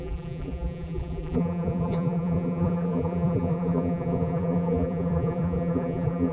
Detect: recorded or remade remade